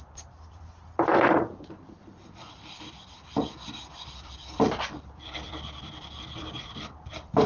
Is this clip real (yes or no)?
no